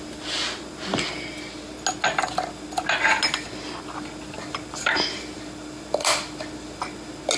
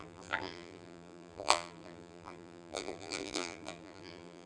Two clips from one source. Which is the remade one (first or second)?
second